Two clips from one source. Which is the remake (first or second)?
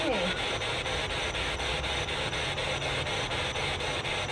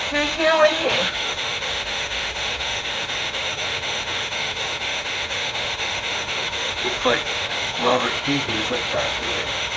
second